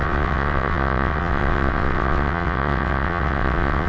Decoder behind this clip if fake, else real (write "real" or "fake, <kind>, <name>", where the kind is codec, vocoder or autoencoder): fake, vocoder, WaveNeXt